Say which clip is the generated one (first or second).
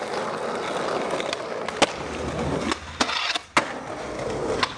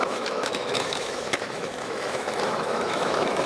second